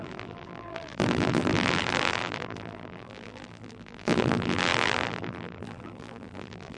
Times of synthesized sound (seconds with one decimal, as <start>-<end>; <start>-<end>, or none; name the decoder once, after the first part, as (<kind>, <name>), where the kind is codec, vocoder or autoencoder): 0.0-6.8 (vocoder, BigVGAN v2)